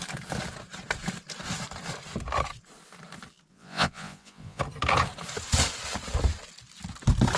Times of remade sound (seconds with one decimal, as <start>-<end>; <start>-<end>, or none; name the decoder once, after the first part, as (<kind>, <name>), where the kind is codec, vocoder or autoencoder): 3.5-4.6 (vocoder, Vocos)